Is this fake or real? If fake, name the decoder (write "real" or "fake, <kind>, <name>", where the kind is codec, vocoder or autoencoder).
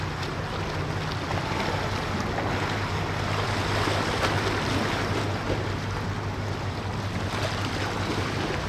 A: real